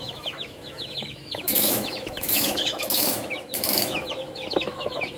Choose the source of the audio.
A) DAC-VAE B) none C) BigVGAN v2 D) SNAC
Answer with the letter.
A